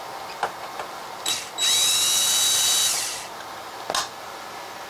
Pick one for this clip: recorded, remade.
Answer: recorded